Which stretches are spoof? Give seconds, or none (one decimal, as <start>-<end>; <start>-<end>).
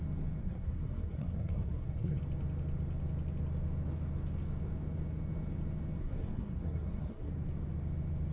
0.4-2.2; 6.0-7.3